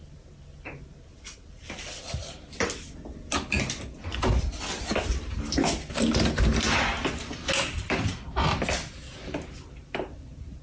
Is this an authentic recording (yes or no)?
yes